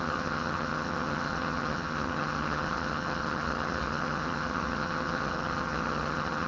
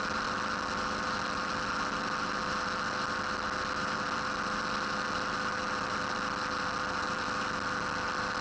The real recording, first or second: second